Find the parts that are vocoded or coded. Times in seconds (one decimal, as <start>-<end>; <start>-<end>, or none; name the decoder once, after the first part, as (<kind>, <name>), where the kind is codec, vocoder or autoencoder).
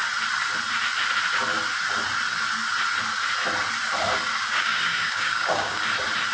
4.4-5.8 (codec, DAC)